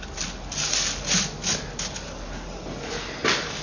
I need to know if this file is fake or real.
real